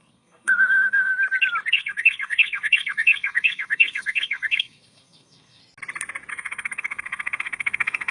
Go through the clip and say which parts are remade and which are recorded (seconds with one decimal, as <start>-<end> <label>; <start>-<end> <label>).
0.0-1.1 remade; 1.1-1.7 recorded; 1.7-5.6 remade; 5.6-6.3 recorded; 6.3-8.1 remade

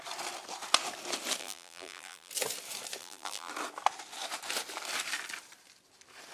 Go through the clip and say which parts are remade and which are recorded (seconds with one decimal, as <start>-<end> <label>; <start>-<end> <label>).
0.0-1.4 recorded; 1.4-2.3 remade; 2.3-3.0 recorded; 3.0-3.5 remade; 3.5-6.3 recorded

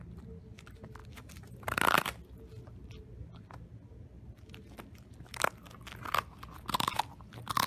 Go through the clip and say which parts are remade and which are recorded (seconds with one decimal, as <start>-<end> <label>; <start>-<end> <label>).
0.0-7.7 recorded

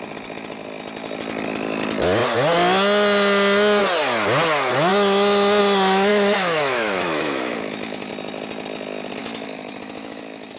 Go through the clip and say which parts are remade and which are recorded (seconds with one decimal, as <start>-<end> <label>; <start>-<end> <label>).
0.0-6.1 recorded; 6.1-8.1 remade; 8.1-9.2 recorded; 9.2-10.6 remade

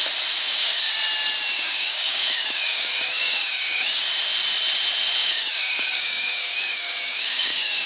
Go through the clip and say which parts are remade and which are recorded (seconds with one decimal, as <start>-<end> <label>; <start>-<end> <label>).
0.0-0.4 recorded; 0.4-0.9 remade; 0.9-1.5 recorded; 1.5-4.0 remade; 4.0-5.2 recorded; 5.2-7.9 remade

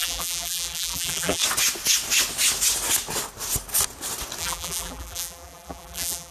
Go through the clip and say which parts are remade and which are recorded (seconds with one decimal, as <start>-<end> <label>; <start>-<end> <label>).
0.0-1.4 remade; 1.4-4.4 recorded; 4.4-6.3 remade